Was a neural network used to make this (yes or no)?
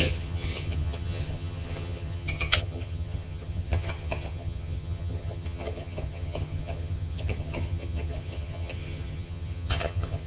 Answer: yes